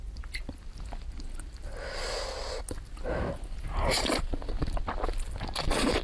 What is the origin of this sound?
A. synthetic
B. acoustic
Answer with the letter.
B